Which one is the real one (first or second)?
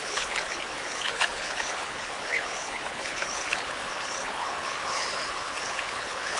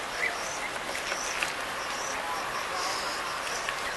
second